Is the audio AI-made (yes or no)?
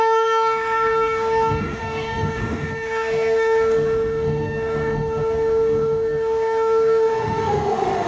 yes